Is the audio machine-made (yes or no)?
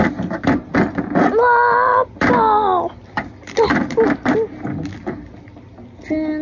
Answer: no